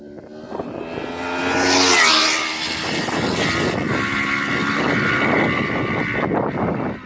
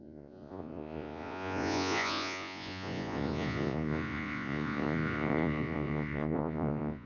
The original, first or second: first